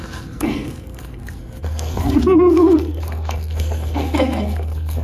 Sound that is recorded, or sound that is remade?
remade